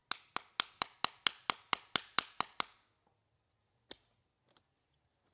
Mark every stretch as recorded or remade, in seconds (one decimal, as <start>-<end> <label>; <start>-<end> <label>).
0.0-5.3 recorded